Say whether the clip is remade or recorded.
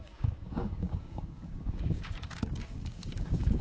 remade